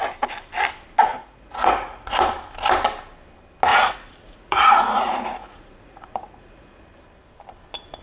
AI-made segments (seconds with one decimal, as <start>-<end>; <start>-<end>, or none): 1.1-2.2; 3.7-6.8